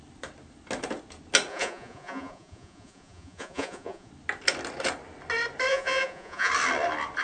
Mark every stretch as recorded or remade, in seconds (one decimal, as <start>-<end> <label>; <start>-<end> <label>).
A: 0.0-1.5 recorded; 1.5-4.1 remade; 4.1-5.7 recorded; 5.7-6.5 remade; 6.5-7.2 recorded